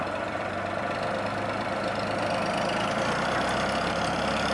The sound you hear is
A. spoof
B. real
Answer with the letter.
A